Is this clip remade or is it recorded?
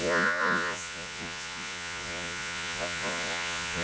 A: remade